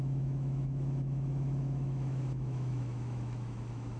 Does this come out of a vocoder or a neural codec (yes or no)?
yes